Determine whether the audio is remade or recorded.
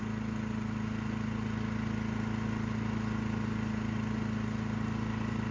recorded